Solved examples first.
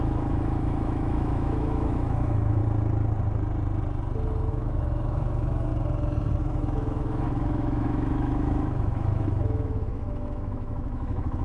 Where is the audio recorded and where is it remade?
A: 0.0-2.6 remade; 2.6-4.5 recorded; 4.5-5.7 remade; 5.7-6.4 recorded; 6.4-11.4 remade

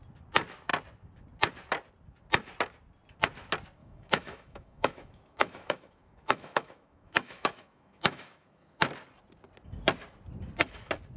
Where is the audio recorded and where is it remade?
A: 0.0-3.8 recorded; 3.8-8.8 remade; 8.8-11.2 recorded

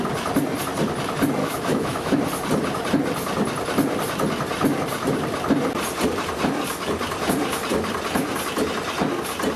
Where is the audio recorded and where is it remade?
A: 0.0-1.4 recorded; 1.4-2.2 remade; 2.2-9.6 recorded